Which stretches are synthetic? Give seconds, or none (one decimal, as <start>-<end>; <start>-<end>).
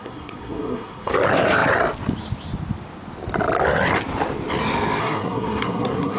0.0-1.1; 5.0-6.2